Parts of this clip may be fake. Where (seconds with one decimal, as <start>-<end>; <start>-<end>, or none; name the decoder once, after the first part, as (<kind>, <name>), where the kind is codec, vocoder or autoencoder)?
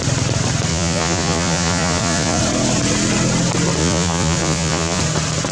0.7-2.4 (vocoder, Vocos); 3.8-5.0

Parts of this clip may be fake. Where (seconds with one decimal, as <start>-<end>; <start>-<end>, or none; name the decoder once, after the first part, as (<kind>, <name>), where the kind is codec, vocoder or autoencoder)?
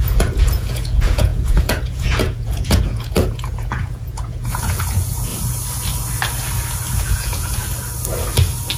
0.0-5.3 (vocoder, Vocos); 7.0-7.6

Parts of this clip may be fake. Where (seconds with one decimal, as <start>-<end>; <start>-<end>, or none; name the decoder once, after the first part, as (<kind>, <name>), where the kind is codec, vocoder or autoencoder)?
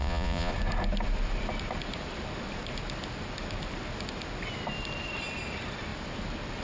0.0-0.5 (vocoder, Vocos)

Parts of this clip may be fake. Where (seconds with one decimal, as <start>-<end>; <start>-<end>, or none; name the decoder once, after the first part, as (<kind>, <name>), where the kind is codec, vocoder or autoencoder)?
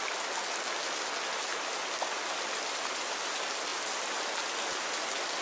none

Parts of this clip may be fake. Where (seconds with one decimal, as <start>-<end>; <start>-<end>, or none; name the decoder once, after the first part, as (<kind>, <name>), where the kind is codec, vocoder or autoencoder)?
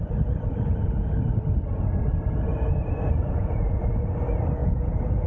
3.2-3.8 (vocoder, Vocos); 4.6-5.3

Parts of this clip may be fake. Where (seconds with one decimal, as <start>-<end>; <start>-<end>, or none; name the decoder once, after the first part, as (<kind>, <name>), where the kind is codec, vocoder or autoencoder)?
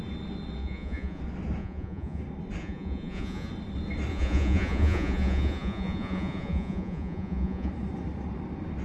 0.6-1.2 (vocoder, Vocos); 1.6-2.2; 2.6-3.5; 4.1-7.7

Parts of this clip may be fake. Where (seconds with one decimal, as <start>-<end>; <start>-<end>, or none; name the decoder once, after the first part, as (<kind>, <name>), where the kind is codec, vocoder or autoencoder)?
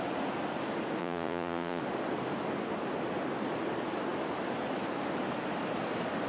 1.0-1.8 (vocoder, Vocos)